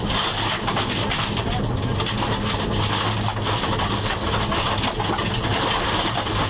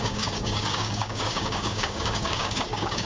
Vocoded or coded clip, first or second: second